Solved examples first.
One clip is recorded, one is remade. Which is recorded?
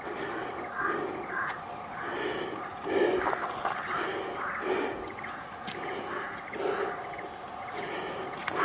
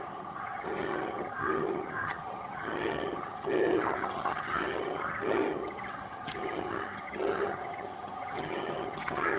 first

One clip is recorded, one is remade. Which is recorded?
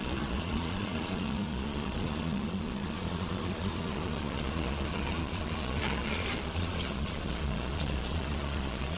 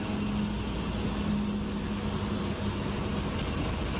second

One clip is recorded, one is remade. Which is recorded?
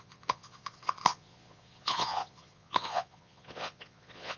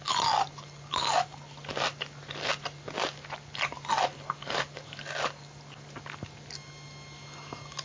second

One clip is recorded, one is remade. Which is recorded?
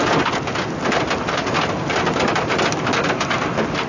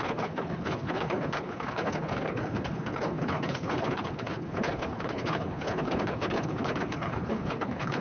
first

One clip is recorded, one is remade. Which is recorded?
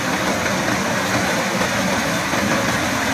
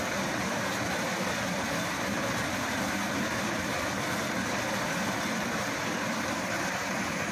first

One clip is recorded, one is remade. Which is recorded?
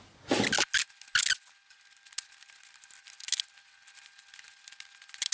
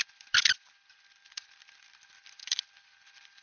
first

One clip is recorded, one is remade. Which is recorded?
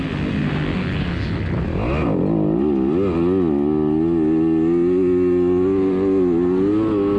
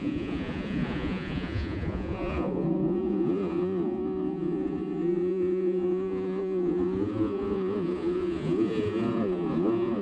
first